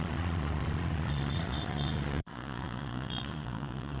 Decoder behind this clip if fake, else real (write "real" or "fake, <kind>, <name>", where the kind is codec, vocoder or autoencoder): fake, vocoder, Vocos